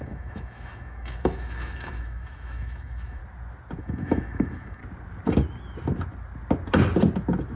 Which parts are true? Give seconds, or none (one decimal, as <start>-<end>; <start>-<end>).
3.2-3.8; 4.8-7.6